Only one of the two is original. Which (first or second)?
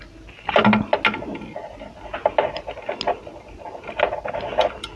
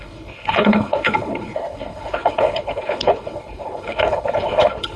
first